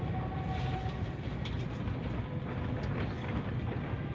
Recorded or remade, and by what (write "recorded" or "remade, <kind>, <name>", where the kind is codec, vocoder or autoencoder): recorded